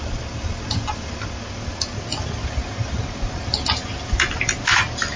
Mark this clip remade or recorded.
recorded